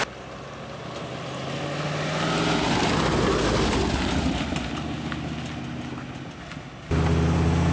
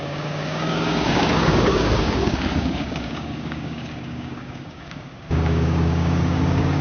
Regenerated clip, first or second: second